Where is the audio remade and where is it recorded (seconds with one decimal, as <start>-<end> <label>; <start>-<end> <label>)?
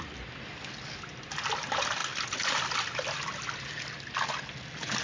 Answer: 0.0-5.0 recorded